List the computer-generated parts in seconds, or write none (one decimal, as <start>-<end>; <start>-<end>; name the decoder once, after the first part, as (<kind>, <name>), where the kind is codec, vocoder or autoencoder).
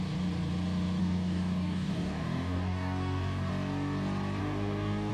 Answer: 1.0-3.5 (codec, DAC); 4.4-5.1